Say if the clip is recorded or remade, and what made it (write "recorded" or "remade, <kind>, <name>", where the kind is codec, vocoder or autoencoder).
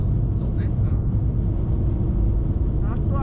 recorded